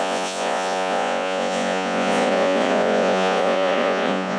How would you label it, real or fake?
fake